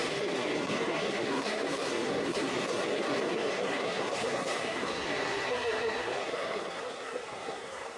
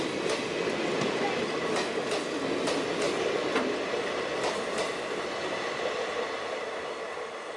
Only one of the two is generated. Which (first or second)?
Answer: first